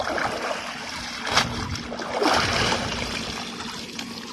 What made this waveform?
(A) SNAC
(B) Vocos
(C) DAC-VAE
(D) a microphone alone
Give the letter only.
D